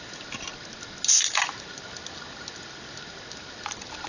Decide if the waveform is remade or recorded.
recorded